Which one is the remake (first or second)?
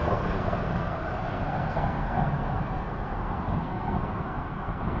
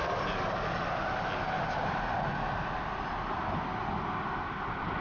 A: first